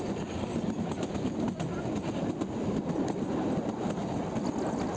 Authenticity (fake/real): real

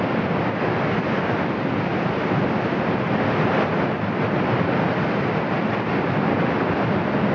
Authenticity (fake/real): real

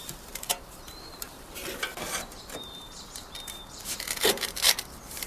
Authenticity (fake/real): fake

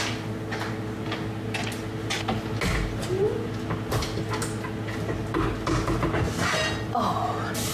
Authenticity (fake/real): real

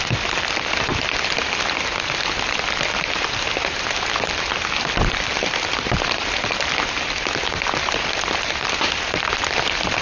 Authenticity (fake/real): fake